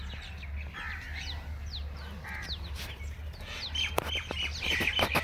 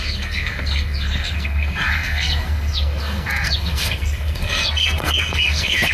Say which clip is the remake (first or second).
second